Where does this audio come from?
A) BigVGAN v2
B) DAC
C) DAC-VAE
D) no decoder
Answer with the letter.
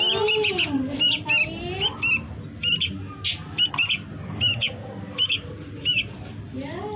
D